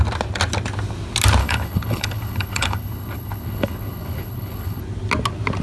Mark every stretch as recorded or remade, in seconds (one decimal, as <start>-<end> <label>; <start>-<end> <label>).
0.0-1.4 recorded; 1.4-4.8 remade; 4.8-5.6 recorded